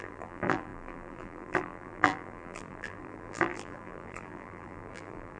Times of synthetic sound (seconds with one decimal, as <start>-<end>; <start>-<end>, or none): 0.0-5.4